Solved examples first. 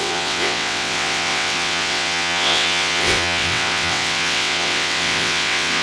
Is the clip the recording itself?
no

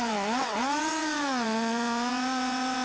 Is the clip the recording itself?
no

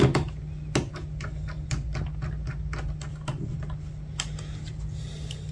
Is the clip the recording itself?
yes